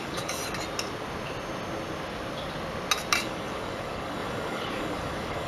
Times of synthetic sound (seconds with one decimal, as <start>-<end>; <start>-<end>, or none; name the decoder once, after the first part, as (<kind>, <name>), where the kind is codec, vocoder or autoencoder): 0.0-0.4 (codec, DAC); 3.2-5.5